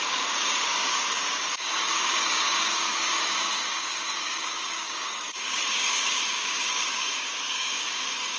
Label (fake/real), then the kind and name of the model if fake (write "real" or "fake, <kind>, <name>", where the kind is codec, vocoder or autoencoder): fake, codec, DAC